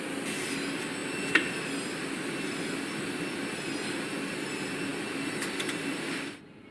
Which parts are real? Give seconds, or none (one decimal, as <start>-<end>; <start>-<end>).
0.0-6.7